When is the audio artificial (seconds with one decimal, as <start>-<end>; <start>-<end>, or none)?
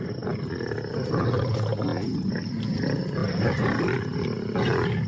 none